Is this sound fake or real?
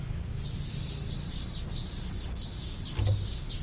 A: real